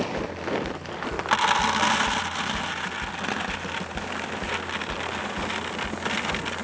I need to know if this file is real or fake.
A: real